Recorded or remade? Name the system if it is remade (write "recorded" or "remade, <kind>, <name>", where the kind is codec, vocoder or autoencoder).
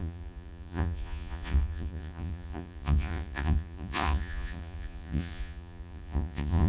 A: remade, vocoder, Vocos